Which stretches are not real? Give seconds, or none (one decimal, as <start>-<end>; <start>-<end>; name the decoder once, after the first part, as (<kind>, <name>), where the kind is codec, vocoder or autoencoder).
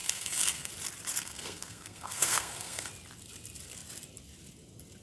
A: 0.0-0.7 (codec, SNAC); 1.1-2.9